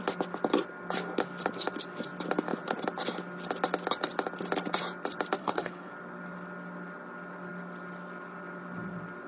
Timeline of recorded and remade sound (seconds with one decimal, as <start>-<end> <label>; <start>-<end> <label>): 0.0-5.4 recorded; 5.4-5.9 remade; 5.9-9.3 recorded